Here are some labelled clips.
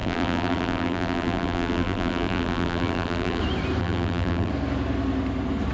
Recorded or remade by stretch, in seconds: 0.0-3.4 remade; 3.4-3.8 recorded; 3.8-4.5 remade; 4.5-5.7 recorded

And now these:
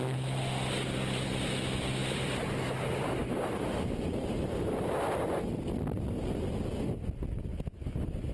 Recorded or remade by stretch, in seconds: 0.0-2.0 recorded; 2.0-4.9 remade; 4.9-8.3 recorded

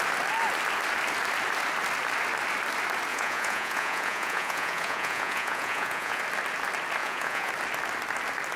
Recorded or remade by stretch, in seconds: 0.0-3.1 recorded; 3.1-6.2 remade; 6.2-7.0 recorded; 7.0-7.5 remade; 7.5-8.6 recorded

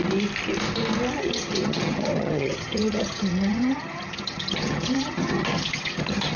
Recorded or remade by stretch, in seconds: 0.0-1.2 recorded; 1.2-6.4 remade

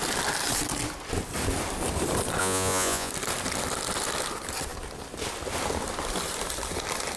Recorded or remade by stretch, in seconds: 0.0-2.4 recorded; 2.4-3.1 remade; 3.1-7.2 recorded